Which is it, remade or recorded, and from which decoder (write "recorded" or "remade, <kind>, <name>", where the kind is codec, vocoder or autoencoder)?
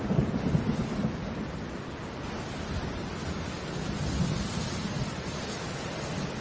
recorded